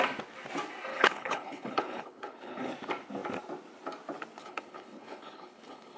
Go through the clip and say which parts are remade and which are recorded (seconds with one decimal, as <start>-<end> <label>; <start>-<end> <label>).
0.0-0.9 recorded; 0.9-2.7 remade; 2.7-4.4 recorded; 4.4-6.0 remade

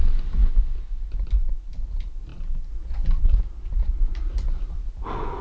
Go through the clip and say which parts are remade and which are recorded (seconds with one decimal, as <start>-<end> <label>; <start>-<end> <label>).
0.0-5.4 recorded

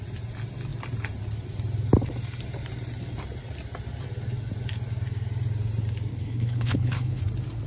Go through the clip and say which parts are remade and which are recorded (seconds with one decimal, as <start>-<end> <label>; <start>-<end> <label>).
0.0-6.1 recorded; 6.1-7.2 remade; 7.2-7.7 recorded

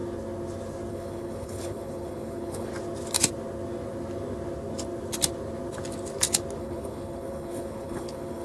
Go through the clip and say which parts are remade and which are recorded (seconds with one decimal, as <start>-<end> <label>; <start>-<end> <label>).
0.0-0.9 recorded; 0.9-2.7 remade; 2.7-6.6 recorded; 6.6-8.4 remade

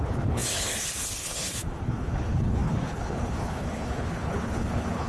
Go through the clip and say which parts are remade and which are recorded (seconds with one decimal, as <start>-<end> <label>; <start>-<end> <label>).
0.0-5.1 remade